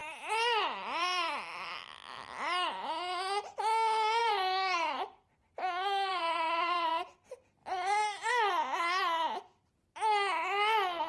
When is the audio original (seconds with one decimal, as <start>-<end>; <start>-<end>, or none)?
1.8-4.2; 5.0-6.1; 6.9-7.6; 8.3-11.1